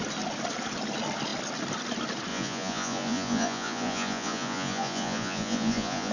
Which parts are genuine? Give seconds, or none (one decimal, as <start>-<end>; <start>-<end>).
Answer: 0.0-2.3